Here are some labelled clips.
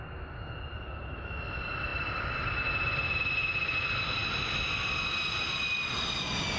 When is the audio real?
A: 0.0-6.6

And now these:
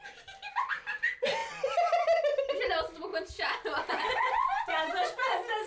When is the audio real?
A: 0.0-3.1; 3.9-5.7

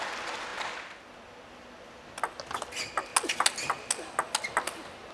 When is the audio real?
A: 0.0-5.1

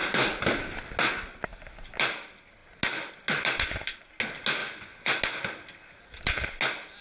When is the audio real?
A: 0.0-4.6; 5.2-7.0

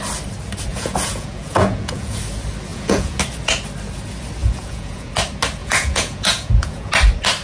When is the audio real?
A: 0.0-0.7; 2.2-2.7; 3.2-4.4; 5.1-5.6; 6.9-7.4

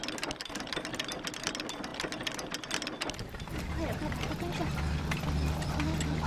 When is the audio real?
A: 0.0-6.3

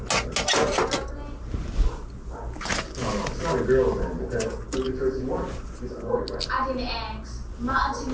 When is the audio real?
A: 0.0-8.1

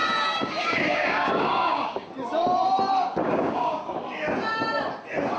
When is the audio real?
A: 2.1-3.2; 3.8-5.4